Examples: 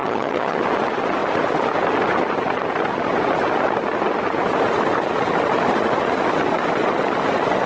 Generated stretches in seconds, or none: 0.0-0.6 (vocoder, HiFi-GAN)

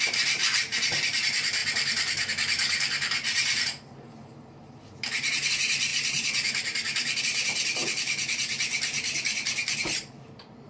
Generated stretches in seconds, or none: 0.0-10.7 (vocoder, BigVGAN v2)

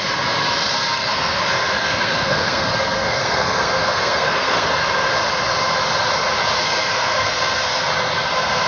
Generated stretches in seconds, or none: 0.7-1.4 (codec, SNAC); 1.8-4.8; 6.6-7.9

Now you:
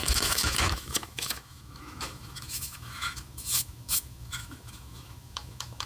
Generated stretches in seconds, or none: 0.0-5.9 (autoencoder, DAC-VAE)

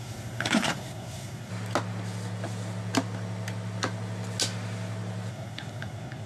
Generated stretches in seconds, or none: 0.0-1.5 (codec, SNAC); 5.3-6.3

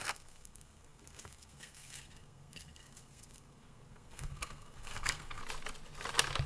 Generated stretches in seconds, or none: 0.0-5.4 (codec, SNAC)